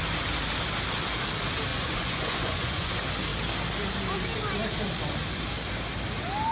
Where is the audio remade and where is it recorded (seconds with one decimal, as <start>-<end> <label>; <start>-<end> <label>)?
0.0-1.7 recorded; 1.7-2.9 remade; 2.9-6.5 recorded

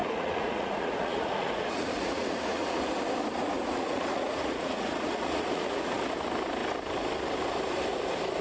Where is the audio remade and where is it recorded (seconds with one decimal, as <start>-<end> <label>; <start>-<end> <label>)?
0.0-2.8 remade; 2.8-3.4 recorded; 3.4-6.0 remade; 6.0-8.4 recorded

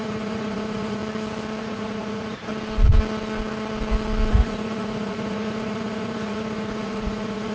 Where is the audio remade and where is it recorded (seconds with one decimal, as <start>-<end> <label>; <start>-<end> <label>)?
0.0-1.0 remade; 1.0-1.6 recorded; 1.6-2.5 remade; 2.5-4.3 recorded; 4.3-7.5 remade

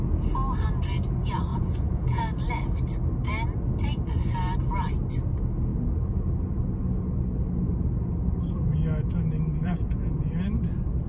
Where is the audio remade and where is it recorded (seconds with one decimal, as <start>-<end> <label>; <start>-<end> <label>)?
0.0-1.5 recorded; 1.5-2.2 remade; 2.2-9.6 recorded; 9.6-10.3 remade; 10.3-11.1 recorded

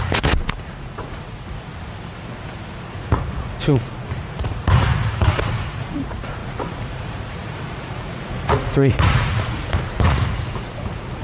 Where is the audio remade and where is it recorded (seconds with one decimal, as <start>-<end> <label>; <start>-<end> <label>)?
0.0-1.7 remade; 1.7-3.0 recorded; 3.0-11.2 remade

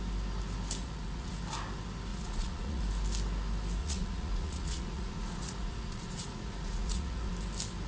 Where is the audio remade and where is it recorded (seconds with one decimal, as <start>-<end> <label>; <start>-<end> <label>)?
0.0-0.8 recorded; 0.8-1.3 remade; 1.3-2.1 recorded; 2.1-2.8 remade; 2.8-3.8 recorded; 3.8-7.3 remade; 7.3-7.9 recorded

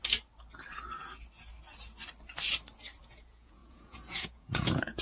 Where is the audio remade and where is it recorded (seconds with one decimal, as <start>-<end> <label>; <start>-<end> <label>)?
0.0-3.0 recorded; 3.0-5.0 remade